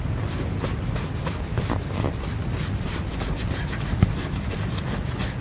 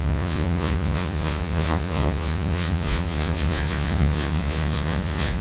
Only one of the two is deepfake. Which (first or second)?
second